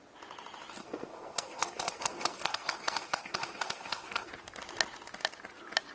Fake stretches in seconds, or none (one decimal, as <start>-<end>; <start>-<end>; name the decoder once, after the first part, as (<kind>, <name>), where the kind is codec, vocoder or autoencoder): 0.8-4.3 (codec, SNAC)